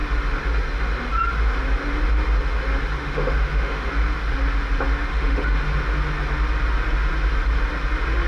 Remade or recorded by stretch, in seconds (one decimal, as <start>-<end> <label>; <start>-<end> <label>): 0.0-3.0 recorded; 3.0-3.9 remade; 3.9-5.1 recorded; 5.1-5.6 remade; 5.6-8.3 recorded